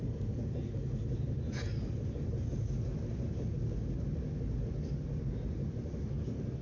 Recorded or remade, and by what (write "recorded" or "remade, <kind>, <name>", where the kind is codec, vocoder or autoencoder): recorded